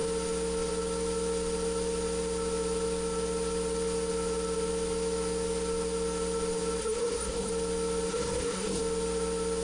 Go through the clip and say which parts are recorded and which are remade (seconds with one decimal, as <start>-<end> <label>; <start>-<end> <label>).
0.0-6.8 recorded; 6.8-7.5 remade; 7.5-8.1 recorded; 8.1-8.8 remade; 8.8-9.6 recorded